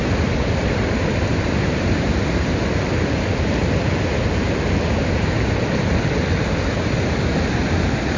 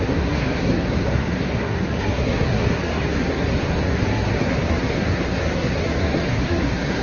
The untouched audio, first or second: first